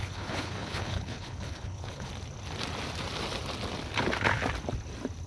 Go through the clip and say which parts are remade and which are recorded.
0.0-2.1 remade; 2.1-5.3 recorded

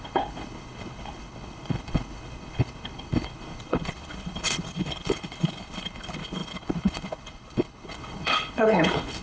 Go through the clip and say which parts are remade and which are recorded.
0.0-9.2 remade

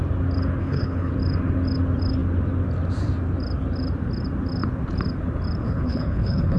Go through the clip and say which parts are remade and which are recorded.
0.0-0.6 recorded; 0.6-1.1 remade; 1.1-5.6 recorded; 5.6-6.6 remade

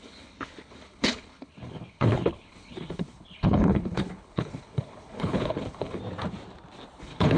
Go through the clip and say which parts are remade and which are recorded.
0.0-6.0 remade; 6.0-7.0 recorded; 7.0-7.4 remade